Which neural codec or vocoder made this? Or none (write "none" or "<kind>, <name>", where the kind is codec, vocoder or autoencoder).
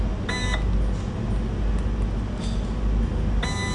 none